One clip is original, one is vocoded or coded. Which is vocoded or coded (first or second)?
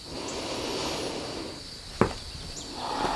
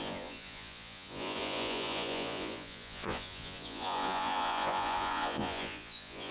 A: second